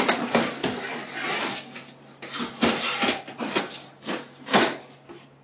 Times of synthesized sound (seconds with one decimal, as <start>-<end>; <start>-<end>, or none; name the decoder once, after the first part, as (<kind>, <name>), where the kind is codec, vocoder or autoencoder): none